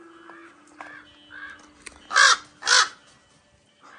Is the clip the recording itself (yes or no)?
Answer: yes